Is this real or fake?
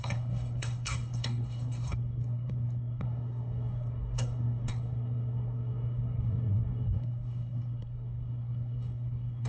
fake